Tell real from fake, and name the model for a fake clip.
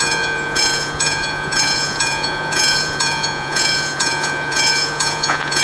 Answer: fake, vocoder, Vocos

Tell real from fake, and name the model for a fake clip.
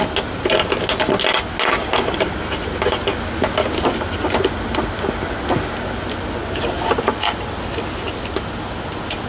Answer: real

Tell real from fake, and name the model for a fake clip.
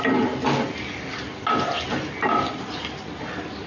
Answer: real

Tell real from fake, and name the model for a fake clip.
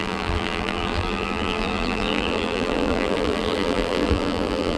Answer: fake, vocoder, BigVGAN v2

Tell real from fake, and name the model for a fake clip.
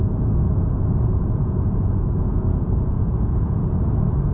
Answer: fake, vocoder, Vocos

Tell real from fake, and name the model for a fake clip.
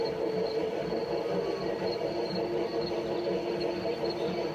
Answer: real